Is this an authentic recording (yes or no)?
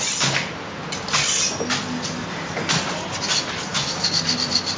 yes